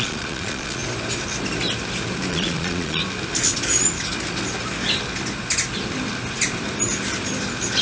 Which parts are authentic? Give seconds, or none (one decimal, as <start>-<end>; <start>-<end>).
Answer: 0.8-2.3; 3.0-7.8